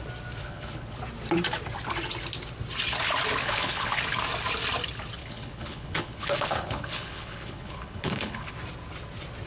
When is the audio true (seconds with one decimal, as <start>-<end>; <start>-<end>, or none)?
0.0-0.4; 1.0-3.4; 4.0-5.2; 8.5-9.5